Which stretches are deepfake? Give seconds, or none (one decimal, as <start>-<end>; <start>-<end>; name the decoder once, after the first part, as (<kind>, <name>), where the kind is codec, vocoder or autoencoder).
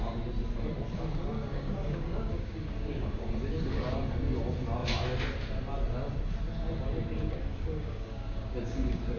1.4-3.3 (codec, DAC); 7.4-9.2